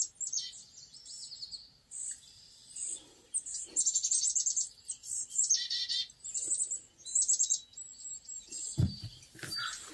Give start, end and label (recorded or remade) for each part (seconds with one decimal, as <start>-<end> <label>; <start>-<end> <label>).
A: 0.0-9.9 recorded